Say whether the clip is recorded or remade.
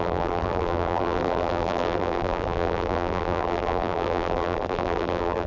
remade